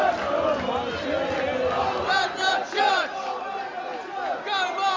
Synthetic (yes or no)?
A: no